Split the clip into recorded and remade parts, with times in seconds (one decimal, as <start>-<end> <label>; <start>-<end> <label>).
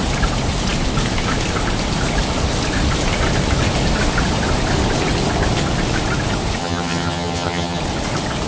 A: 0.0-6.6 recorded; 6.6-7.8 remade; 7.8-8.5 recorded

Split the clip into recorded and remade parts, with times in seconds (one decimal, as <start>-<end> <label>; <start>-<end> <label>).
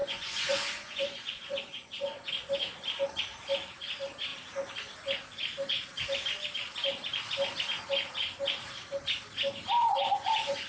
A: 0.0-2.3 remade; 2.3-9.8 recorded; 9.8-10.7 remade